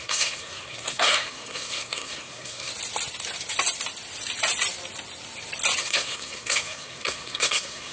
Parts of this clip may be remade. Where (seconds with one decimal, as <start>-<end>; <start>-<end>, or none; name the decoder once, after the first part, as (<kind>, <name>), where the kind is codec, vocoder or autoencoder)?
0.0-2.7 (codec, SNAC); 5.8-7.9